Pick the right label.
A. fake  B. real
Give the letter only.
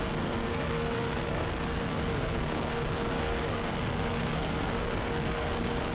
A